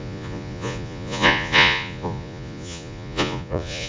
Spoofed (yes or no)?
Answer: yes